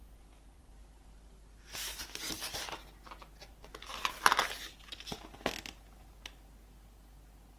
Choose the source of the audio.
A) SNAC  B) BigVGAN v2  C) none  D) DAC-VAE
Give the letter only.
C